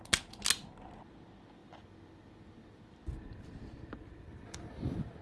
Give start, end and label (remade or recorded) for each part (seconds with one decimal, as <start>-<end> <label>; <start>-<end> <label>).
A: 0.0-1.6 recorded; 1.6-4.7 remade; 4.7-5.2 recorded